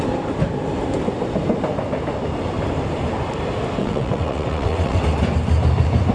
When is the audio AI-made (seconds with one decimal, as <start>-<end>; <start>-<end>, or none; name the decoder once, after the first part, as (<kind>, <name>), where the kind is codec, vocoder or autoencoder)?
3.8-5.0 (vocoder, WaveNeXt)